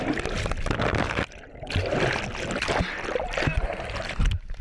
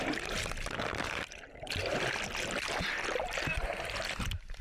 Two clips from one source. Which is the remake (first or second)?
second